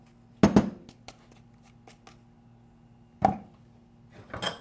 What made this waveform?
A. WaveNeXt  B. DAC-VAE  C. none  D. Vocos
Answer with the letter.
C